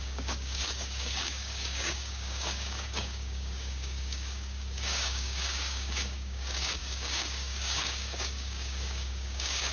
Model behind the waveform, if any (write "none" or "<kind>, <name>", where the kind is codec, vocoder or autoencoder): codec, DAC